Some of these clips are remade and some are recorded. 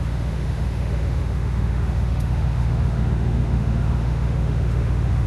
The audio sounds remade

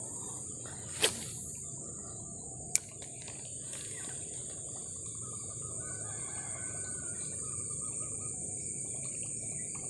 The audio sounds recorded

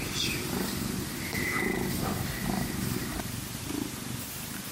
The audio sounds recorded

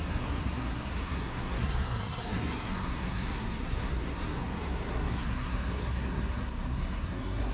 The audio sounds remade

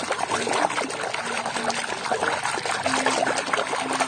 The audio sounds recorded